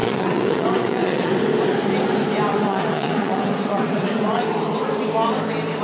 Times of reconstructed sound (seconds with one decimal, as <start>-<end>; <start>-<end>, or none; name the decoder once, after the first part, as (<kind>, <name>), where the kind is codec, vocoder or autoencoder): 0.0-1.3 (vocoder, WaveNeXt); 2.5-4.4